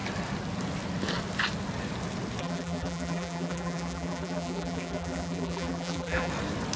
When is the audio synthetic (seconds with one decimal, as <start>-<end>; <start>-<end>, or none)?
2.4-6.3